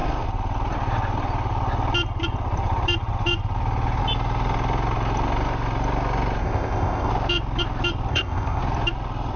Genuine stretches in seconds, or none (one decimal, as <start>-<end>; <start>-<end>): 0.0-6.4; 7.1-8.1; 8.6-9.4

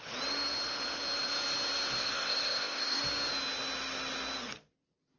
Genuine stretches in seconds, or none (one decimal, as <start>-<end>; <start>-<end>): 0.0-2.0; 3.0-5.2

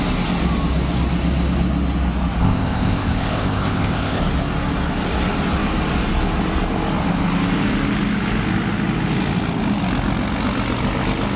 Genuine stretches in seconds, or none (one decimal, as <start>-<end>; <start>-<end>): 0.0-2.4; 4.2-11.4

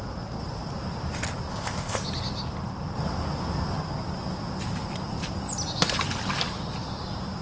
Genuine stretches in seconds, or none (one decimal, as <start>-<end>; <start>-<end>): 0.0-1.5; 2.0-7.4

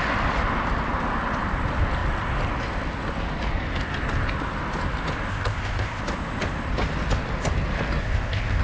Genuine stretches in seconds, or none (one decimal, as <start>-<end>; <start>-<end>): 0.0-5.3; 6.0-8.0